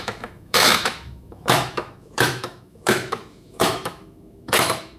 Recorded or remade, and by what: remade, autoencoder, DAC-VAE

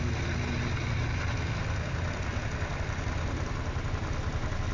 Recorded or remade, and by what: recorded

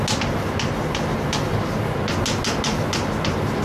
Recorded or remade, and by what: recorded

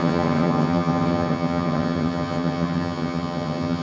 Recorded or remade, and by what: remade, vocoder, HiFi-GAN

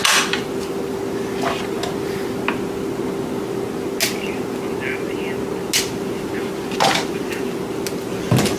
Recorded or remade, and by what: recorded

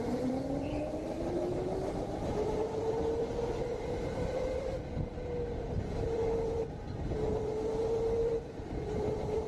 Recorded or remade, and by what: remade, vocoder, BigVGAN v2